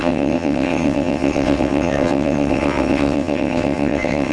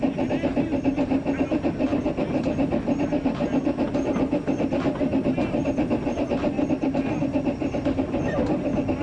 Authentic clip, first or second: second